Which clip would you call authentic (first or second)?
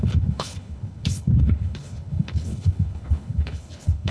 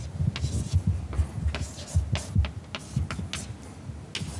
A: second